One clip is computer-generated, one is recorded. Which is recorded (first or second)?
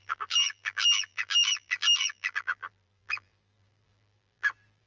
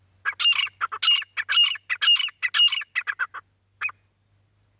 second